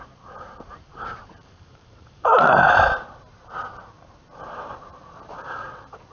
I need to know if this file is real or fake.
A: fake